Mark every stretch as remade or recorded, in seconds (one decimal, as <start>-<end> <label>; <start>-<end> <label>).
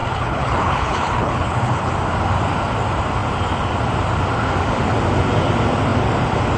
0.0-1.9 remade; 1.9-6.6 recorded